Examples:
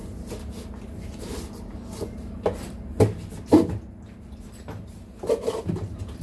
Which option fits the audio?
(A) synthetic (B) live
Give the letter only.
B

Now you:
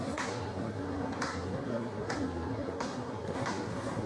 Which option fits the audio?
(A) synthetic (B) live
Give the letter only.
A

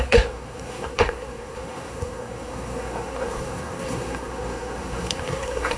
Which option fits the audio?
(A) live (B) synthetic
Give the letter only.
B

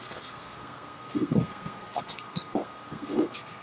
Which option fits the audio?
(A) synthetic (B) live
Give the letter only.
A